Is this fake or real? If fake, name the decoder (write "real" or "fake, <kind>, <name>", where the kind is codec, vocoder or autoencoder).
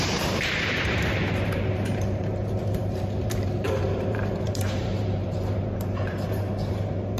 fake, vocoder, BigVGAN v2